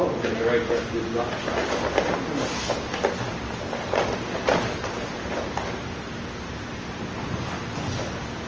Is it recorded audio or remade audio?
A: recorded